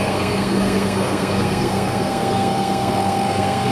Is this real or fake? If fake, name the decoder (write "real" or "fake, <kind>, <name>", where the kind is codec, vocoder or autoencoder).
fake, codec, SNAC